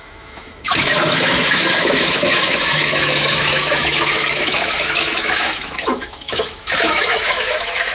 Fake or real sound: fake